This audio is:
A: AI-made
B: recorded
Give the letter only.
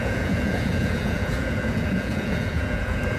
A